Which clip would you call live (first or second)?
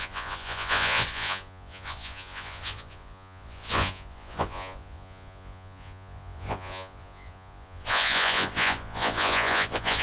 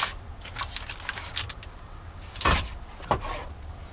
second